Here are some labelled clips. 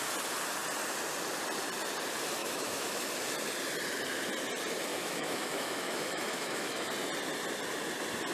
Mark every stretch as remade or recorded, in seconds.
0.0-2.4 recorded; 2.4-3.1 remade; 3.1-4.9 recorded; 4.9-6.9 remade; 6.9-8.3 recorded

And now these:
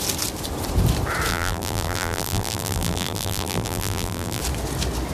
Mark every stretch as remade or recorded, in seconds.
0.0-1.3 recorded; 1.3-4.4 remade; 4.4-5.1 recorded